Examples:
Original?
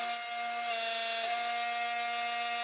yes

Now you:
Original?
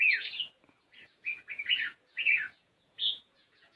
no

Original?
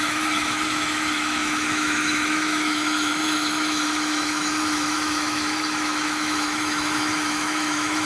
no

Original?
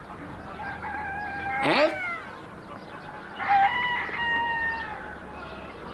yes